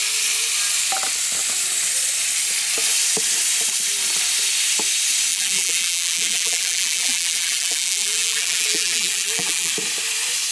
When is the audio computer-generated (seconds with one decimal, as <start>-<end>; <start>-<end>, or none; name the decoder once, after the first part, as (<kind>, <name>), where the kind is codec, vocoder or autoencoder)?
5.3-9.7 (vocoder, BigVGAN v2)